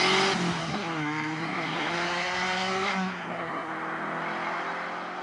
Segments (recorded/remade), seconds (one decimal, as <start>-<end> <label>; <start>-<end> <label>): 0.0-0.6 recorded; 0.6-3.7 remade; 3.7-5.2 recorded